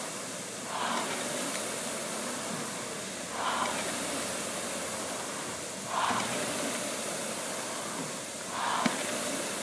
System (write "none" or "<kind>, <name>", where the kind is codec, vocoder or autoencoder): none